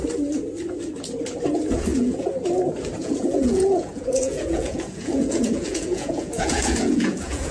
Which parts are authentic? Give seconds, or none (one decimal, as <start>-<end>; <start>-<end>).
0.0-1.9; 2.4-3.0